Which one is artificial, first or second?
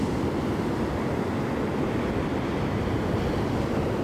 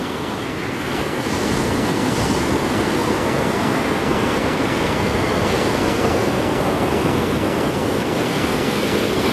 second